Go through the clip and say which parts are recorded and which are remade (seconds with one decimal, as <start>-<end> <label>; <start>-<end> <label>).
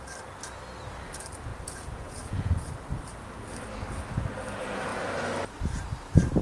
0.0-1.5 recorded; 1.5-2.6 remade; 2.6-6.4 recorded